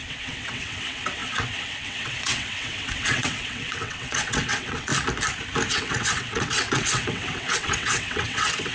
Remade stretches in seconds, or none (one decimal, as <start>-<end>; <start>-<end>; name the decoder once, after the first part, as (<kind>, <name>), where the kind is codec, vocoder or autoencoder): 0.0-4.9 (vocoder, WaveNeXt); 5.7-8.7

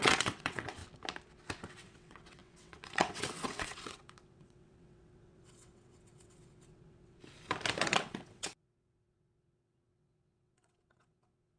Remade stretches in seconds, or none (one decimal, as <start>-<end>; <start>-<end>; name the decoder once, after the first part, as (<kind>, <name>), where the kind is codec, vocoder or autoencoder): 0.0-0.8 (vocoder, WaveNeXt); 1.7-7.2; 7.8-11.6

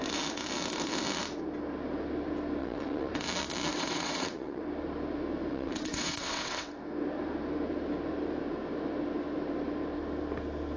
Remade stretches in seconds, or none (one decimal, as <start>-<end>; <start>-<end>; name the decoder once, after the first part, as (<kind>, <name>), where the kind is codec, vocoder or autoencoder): 2.6-3.1 (vocoder, WaveNeXt); 3.7-4.6; 5.5-6.7

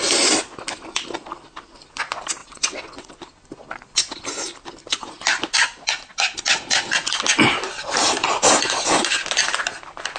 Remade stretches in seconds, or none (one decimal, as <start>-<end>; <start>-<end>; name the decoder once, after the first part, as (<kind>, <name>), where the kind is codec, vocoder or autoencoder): 2.4-3.1 (vocoder, WaveNeXt)

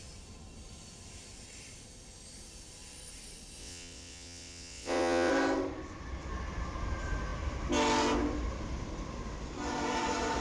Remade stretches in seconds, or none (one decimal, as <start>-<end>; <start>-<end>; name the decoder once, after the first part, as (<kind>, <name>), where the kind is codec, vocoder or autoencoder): 3.6-5.3 (vocoder, WaveNeXt)

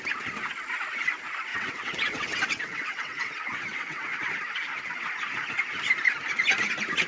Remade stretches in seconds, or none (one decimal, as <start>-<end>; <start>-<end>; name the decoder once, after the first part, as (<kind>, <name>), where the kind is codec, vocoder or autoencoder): 1.5-4.3 (vocoder, WaveNeXt)